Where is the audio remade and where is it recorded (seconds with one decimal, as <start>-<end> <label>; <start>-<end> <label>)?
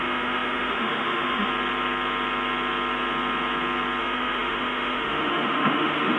0.0-1.5 remade; 1.5-4.0 recorded; 4.0-6.2 remade